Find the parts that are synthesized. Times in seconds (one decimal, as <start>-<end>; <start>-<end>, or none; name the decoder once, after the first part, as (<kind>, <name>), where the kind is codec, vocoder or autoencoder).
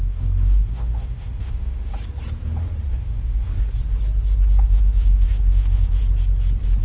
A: 0.0-1.9 (autoencoder, DAC-VAE); 3.0-3.5; 4.6-6.0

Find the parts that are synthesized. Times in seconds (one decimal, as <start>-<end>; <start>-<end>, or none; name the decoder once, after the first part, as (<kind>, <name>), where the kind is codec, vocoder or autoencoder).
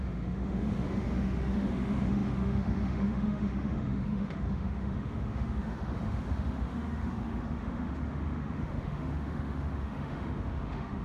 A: 0.0-11.0 (autoencoder, DAC-VAE)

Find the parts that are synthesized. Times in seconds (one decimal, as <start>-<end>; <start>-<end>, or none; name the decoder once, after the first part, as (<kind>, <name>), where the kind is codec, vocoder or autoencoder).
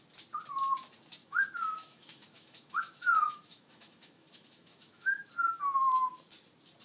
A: 1.2-5.3 (autoencoder, DAC-VAE)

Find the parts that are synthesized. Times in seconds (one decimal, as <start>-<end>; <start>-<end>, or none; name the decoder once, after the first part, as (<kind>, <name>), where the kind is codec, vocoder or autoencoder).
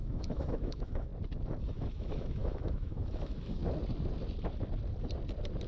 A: 0.0-1.1 (autoencoder, DAC-VAE); 1.6-3.6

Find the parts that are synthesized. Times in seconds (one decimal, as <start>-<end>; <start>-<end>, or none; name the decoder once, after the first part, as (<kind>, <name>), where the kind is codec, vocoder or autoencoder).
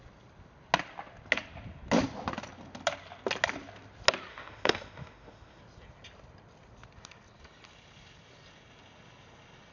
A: 4.3-5.6 (autoencoder, DAC-VAE)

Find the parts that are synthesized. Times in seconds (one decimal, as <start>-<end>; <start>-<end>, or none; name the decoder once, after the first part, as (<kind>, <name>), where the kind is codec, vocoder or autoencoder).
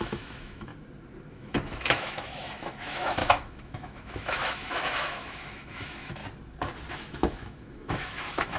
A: 0.0-0.7 (autoencoder, DAC-VAE); 1.3-6.2; 6.9-8.6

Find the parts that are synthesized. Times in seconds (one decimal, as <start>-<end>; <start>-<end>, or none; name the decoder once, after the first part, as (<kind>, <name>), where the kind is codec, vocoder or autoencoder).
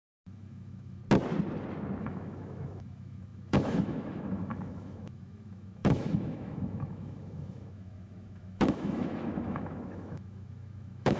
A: 0.0-1.0 (autoencoder, DAC-VAE); 2.0-11.2